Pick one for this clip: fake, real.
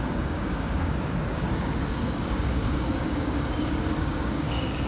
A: fake